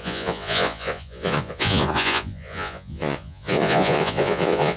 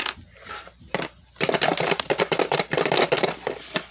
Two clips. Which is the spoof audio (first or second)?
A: first